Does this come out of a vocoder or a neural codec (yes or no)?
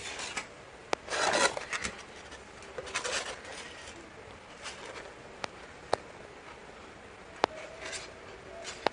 no